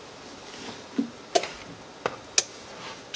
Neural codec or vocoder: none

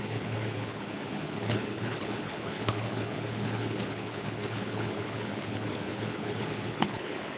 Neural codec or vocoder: codec, HILCodec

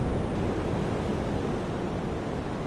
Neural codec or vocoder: none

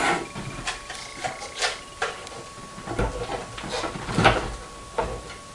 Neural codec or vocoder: none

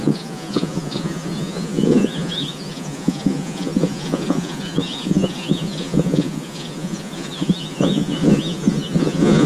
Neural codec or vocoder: vocoder, Vocos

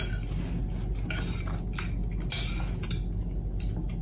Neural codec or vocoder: none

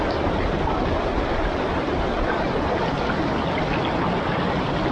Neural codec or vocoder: none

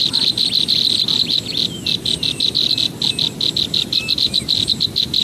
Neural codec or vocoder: none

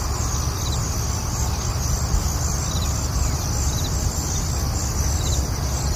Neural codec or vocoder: none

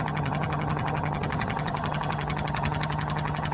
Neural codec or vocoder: vocoder, HiFi-GAN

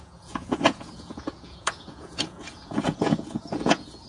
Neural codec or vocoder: vocoder, Vocos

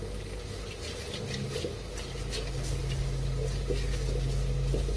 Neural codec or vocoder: none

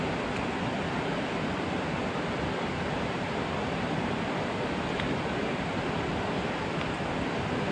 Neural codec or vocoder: none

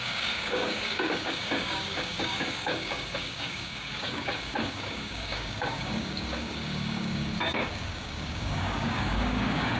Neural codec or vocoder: codec, DAC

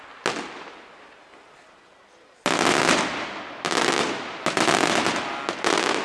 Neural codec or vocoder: none